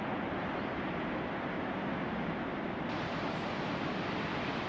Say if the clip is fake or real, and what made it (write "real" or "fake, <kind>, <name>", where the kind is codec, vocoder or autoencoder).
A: real